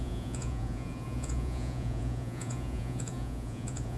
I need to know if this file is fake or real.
fake